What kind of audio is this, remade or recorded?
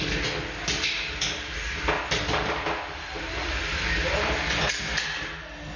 recorded